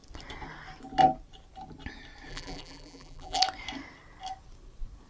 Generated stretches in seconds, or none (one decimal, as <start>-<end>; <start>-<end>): 2.3-3.4